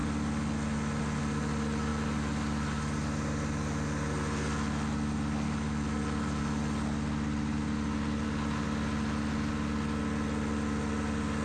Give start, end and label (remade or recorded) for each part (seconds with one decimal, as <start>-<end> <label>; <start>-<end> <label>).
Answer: 0.0-11.4 recorded